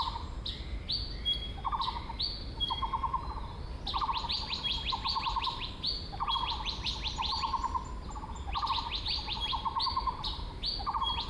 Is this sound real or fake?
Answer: real